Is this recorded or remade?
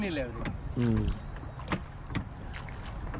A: recorded